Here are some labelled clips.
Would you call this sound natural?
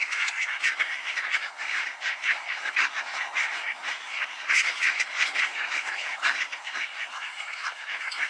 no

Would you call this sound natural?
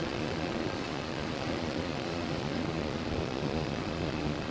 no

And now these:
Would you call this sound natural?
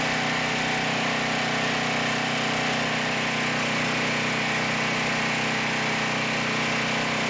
yes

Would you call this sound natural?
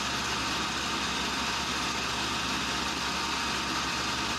yes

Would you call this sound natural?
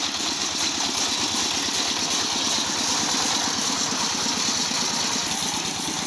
yes